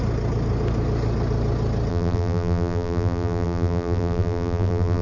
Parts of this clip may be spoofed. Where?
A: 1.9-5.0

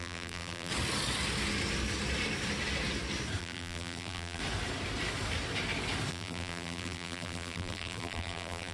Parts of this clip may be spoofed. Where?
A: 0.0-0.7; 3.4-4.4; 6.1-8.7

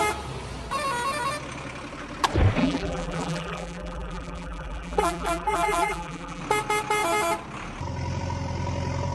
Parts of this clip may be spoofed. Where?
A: 2.6-6.4

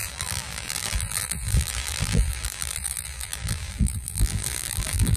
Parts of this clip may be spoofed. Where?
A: 0.0-5.2

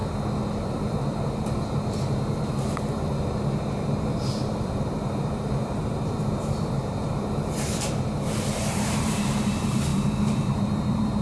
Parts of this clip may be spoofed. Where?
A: 0.5-11.2